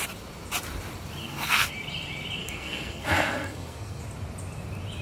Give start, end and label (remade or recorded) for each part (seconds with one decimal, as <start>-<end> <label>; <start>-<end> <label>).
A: 0.0-1.2 recorded; 1.2-1.7 remade; 1.7-2.4 recorded; 2.4-4.0 remade; 4.0-5.0 recorded